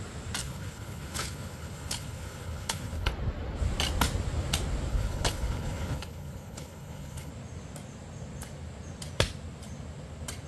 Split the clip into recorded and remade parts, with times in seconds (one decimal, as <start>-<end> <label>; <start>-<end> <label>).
0.0-0.4 recorded; 0.4-3.1 remade; 3.1-4.9 recorded; 4.9-7.3 remade; 7.3-10.5 recorded